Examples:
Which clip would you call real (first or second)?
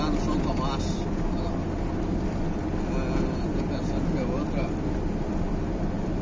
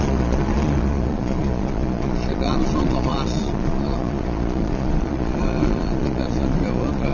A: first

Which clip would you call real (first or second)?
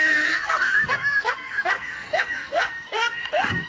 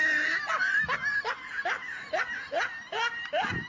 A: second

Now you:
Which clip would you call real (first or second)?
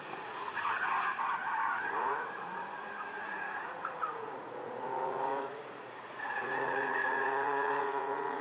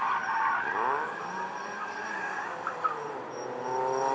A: second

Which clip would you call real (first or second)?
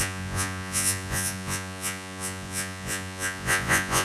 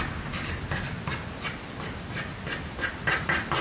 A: second